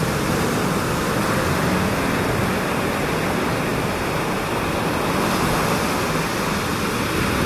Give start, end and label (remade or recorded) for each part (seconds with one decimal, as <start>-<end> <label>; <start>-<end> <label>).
0.0-7.5 recorded